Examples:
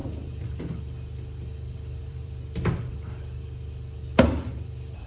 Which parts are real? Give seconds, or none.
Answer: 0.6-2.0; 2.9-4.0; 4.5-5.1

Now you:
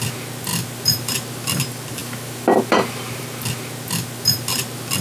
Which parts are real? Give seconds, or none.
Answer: 0.0-5.0

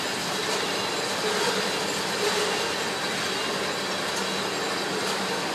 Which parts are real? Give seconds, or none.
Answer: 0.0-1.1; 3.3-5.5

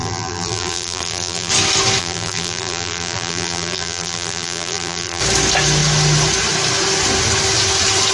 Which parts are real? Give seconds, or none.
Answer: 1.5-2.0; 5.2-8.1

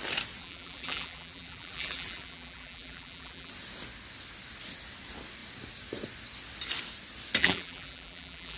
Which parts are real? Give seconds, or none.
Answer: 0.0-0.4; 3.5-7.4

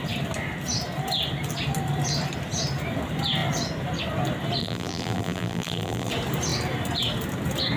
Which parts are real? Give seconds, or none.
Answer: 0.0-4.6; 6.1-7.8